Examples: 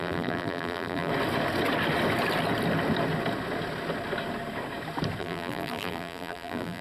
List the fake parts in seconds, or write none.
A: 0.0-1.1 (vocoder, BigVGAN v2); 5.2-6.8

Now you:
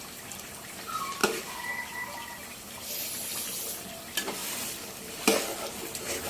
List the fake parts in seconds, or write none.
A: 4.4-5.4 (vocoder, BigVGAN v2)

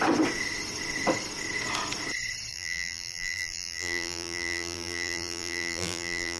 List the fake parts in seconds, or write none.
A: 2.5-6.4 (vocoder, BigVGAN v2)